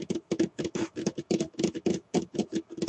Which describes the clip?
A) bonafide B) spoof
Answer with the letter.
B